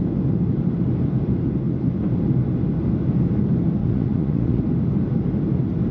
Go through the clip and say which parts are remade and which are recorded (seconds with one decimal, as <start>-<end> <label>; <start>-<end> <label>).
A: 0.0-3.8 recorded; 3.8-4.6 remade; 4.6-5.9 recorded